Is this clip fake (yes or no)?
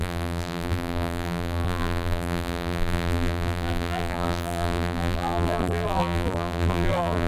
yes